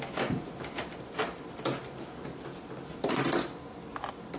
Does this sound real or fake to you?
real